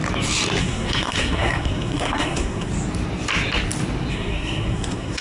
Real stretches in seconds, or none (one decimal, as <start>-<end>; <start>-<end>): 0.0-0.6; 2.7-4.1